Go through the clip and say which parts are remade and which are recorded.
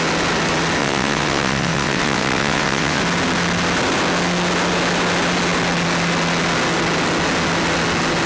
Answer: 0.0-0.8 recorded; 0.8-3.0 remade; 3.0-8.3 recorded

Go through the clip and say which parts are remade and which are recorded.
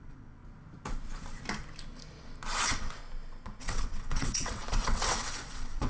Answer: 0.0-0.4 remade; 0.4-2.6 recorded; 2.6-3.0 remade; 3.0-3.6 recorded; 3.6-5.9 remade